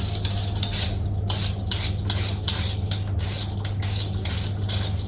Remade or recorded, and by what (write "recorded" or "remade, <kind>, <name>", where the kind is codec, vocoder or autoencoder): recorded